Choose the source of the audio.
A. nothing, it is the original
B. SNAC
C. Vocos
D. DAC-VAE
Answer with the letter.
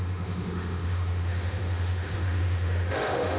D